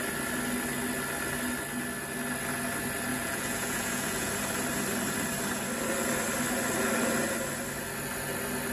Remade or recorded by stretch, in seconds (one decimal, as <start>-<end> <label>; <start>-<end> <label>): 0.0-3.1 recorded; 3.1-4.3 remade; 4.3-8.7 recorded